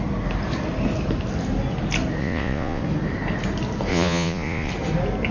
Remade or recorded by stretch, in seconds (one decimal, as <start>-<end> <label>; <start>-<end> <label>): 0.0-2.2 recorded; 2.2-2.8 remade; 2.8-3.9 recorded; 3.9-4.7 remade; 4.7-5.3 recorded